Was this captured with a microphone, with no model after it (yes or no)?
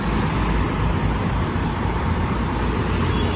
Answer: yes